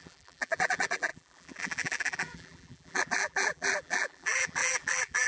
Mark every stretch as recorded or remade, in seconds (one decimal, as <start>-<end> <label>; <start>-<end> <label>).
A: 0.0-5.3 remade